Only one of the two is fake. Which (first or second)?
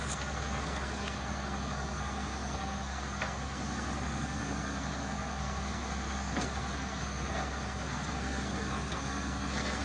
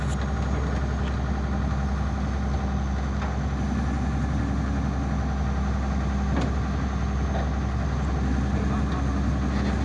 first